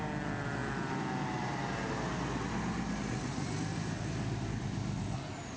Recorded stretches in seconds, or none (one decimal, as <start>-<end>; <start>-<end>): 0.0-5.6